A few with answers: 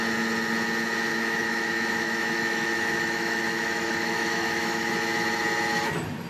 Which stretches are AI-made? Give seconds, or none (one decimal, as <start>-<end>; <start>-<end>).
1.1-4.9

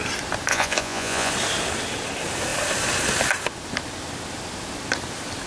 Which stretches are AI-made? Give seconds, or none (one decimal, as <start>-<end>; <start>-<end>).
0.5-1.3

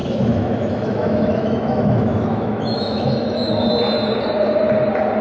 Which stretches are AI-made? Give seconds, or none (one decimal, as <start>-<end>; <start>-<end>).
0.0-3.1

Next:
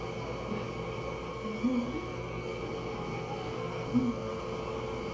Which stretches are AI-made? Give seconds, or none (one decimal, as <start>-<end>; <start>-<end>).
1.3-2.6; 3.1-4.4

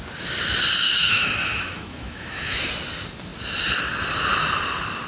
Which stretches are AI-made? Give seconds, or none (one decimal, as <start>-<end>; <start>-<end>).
0.8-2.7